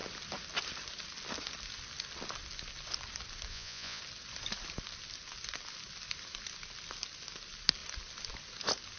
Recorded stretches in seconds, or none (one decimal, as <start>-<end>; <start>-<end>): 0.0-3.5; 4.0-9.0